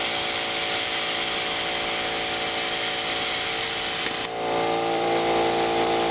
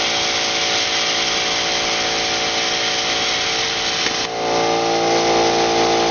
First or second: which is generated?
first